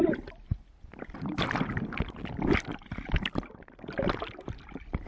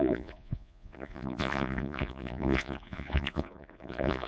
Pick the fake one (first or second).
second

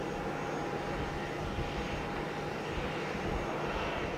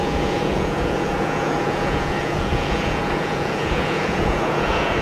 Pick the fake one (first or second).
second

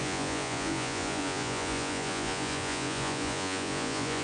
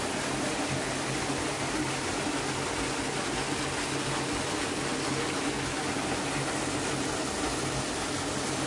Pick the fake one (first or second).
first